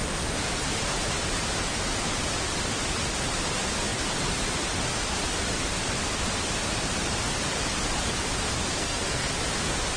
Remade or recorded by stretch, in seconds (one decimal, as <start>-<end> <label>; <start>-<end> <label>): 0.0-8.6 recorded; 8.6-9.3 remade; 9.3-10.0 recorded